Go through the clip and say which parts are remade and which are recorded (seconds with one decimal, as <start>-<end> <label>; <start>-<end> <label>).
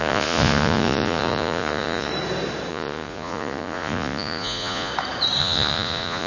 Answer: 0.0-2.1 remade; 2.1-2.7 recorded; 2.7-4.9 remade; 4.9-5.4 recorded; 5.4-6.3 remade